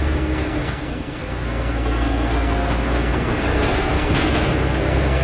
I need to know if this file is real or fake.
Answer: fake